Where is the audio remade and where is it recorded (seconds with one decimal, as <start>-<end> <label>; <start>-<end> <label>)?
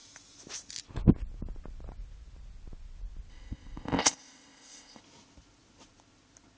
0.0-3.3 recorded; 3.3-5.0 remade; 5.0-6.6 recorded